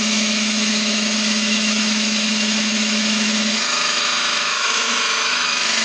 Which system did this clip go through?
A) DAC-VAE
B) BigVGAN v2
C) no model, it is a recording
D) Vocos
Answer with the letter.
A